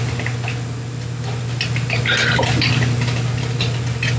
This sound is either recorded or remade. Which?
recorded